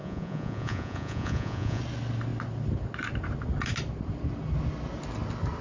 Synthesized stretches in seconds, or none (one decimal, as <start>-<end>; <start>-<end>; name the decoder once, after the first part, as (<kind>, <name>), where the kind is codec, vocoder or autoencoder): 0.0-1.8 (vocoder, Vocos)